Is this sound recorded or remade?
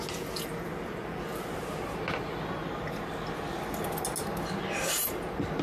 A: recorded